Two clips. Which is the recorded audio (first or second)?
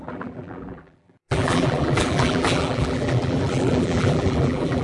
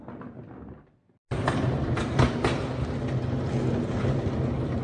second